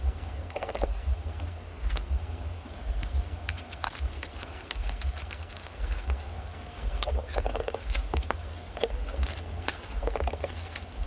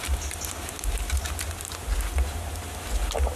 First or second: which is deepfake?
first